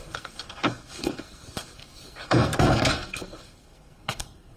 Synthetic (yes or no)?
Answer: yes